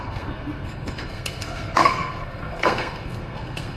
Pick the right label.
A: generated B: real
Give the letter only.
A